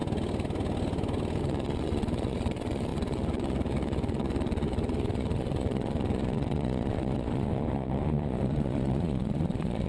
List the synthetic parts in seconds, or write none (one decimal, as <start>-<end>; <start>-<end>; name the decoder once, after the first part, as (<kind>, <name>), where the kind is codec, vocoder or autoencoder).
1.4-9.9 (vocoder, Vocos)